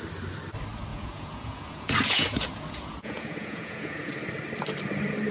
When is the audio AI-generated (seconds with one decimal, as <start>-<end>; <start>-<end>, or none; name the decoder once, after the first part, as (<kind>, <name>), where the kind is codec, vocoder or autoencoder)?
0.9-4.1 (vocoder, Vocos)